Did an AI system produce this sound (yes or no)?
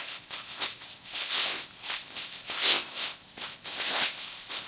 yes